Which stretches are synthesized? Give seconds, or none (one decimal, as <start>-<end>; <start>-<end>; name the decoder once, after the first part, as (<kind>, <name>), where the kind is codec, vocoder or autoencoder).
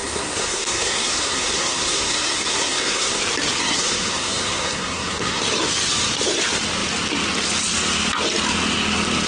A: 0.0-3.2 (codec, SNAC); 3.6-5.4